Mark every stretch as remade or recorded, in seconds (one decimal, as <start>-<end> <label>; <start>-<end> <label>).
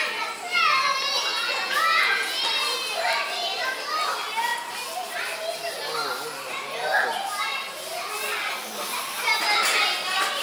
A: 0.0-1.3 recorded; 1.3-2.4 remade; 2.4-10.4 recorded